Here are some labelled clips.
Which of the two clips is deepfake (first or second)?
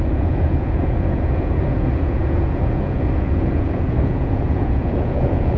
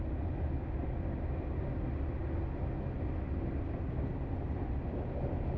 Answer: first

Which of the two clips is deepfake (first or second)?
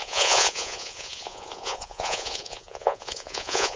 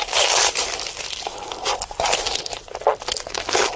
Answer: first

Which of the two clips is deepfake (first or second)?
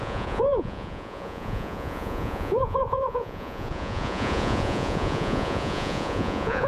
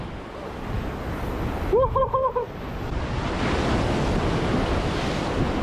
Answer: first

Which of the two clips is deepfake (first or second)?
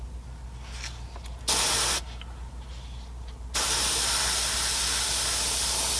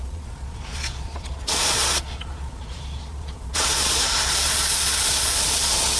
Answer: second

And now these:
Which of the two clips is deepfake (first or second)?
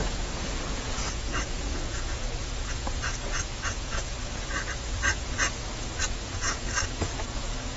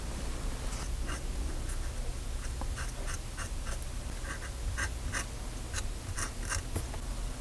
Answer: first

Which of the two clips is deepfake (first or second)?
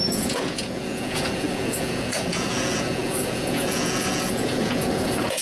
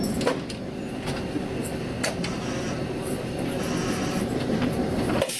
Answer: first